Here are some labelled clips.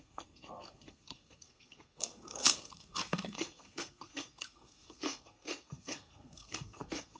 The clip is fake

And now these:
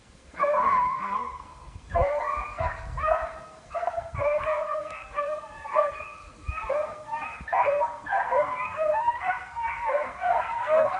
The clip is fake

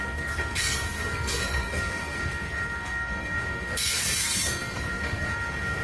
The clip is fake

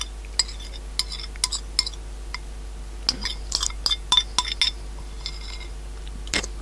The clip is real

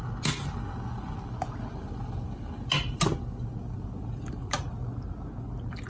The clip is real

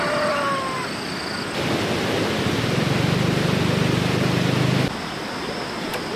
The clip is real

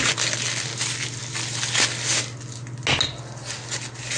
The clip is real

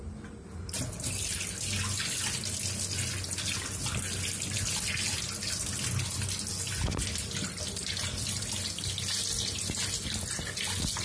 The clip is real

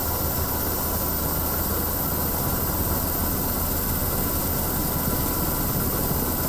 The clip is real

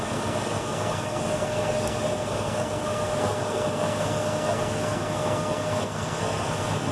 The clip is fake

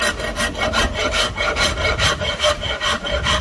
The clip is real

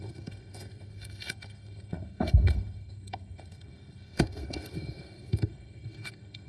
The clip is fake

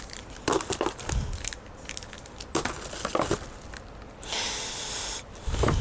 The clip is real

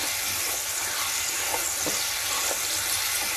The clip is real